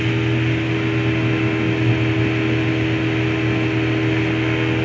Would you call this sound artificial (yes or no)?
no